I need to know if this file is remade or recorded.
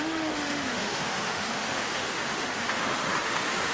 remade